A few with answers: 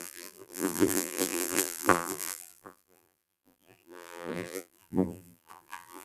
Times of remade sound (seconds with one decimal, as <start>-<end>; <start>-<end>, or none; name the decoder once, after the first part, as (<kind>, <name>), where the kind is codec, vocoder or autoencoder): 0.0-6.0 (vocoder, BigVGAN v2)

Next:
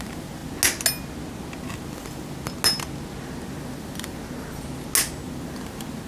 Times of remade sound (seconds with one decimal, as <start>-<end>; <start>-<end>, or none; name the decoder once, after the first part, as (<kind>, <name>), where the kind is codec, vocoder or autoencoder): none

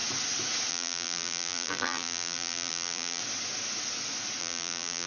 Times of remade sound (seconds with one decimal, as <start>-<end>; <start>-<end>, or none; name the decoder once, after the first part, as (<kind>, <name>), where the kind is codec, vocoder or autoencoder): 0.7-3.2 (vocoder, BigVGAN v2); 4.4-5.1

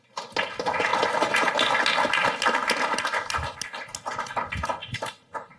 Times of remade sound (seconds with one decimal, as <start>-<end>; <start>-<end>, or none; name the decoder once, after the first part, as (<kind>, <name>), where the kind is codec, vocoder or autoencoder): 0.9-1.5 (vocoder, BigVGAN v2); 4.8-5.6